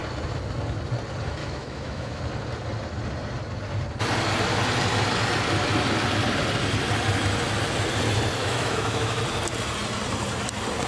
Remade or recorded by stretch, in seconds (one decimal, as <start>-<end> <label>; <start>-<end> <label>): 0.0-1.4 recorded; 1.4-2.2 remade; 2.2-8.4 recorded; 8.4-9.2 remade; 9.2-10.9 recorded